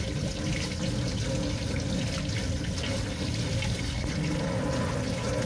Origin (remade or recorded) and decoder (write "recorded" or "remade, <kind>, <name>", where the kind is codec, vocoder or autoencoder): recorded